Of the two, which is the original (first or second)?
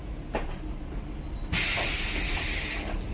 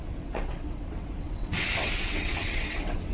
first